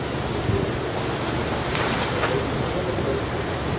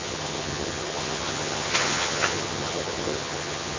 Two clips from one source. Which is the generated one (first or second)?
second